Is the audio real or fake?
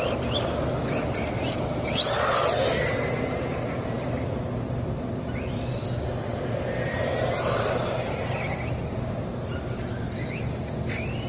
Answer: real